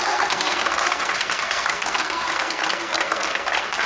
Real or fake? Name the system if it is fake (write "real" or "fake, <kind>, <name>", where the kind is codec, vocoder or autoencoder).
fake, codec, SNAC